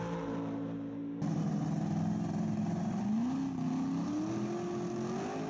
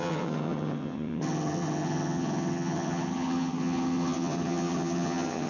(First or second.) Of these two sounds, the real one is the first